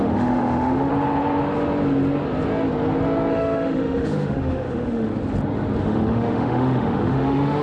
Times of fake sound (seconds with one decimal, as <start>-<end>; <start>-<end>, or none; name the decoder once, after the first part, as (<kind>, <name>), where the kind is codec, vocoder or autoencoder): 0.0-0.9 (autoencoder, DAC-VAE); 3.3-5.1; 5.8-7.6